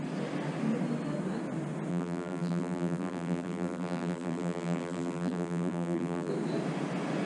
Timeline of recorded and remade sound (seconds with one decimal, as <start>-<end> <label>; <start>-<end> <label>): 0.0-1.9 recorded; 1.9-6.3 remade; 6.3-7.3 recorded